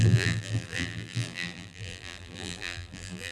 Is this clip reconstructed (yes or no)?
yes